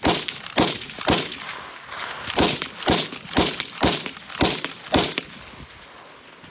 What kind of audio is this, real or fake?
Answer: real